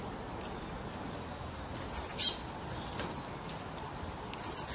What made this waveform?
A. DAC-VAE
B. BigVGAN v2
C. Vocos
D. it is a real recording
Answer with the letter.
D